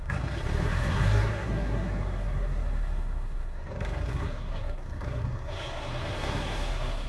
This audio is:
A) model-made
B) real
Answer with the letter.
A